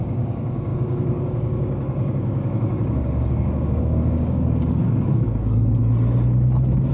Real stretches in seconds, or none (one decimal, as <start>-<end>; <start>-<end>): 5.8-6.9

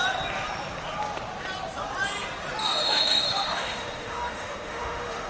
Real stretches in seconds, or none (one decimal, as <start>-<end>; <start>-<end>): 0.0-2.6

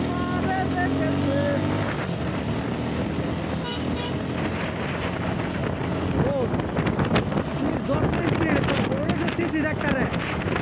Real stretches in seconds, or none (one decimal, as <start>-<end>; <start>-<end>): 0.0-10.6